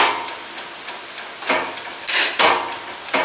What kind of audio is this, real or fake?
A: real